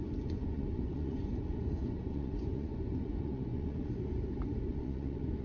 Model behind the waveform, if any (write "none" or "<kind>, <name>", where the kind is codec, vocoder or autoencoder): vocoder, Vocos